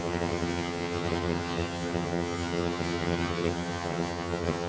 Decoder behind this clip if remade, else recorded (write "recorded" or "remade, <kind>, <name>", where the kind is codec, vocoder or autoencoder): remade, vocoder, HiFi-GAN